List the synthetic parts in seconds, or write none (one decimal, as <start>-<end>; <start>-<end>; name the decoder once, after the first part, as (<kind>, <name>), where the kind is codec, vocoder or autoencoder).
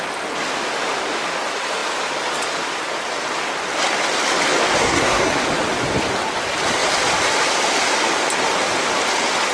4.8-5.4 (codec, SNAC)